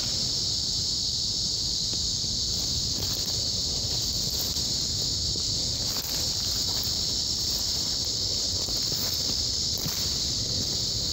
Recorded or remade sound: recorded